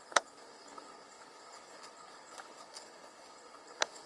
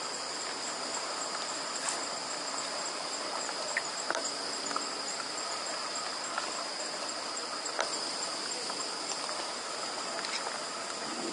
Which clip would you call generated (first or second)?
first